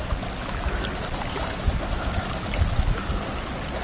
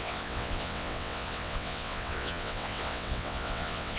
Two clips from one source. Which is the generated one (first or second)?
second